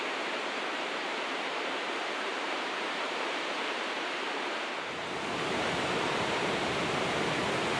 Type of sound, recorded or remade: remade